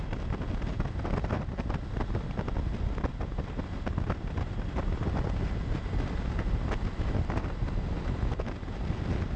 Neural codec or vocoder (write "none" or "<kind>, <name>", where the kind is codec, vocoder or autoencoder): none